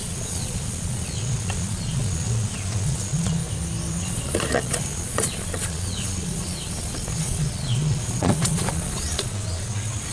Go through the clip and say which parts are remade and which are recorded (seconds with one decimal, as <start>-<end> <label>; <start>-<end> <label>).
0.0-3.4 remade; 3.4-4.0 recorded; 4.0-10.1 remade